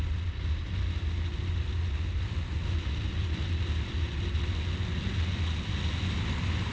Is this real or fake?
real